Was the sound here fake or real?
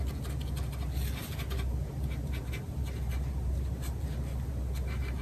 real